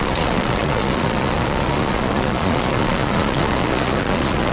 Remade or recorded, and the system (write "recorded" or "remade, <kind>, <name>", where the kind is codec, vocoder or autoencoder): remade, vocoder, Vocos